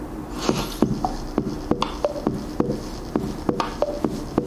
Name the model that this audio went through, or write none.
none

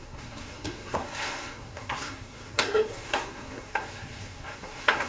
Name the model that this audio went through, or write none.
codec, SNAC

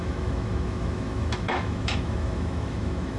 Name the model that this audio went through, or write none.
autoencoder, DAC-VAE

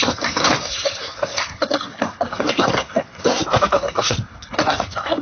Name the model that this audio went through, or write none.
codec, SNAC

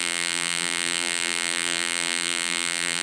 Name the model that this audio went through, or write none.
vocoder, BigVGAN v2